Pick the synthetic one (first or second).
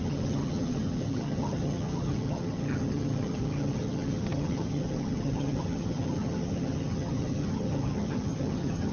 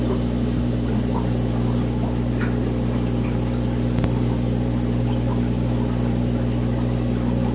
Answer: first